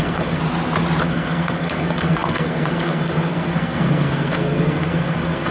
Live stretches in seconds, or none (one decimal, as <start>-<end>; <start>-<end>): 0.4-1.0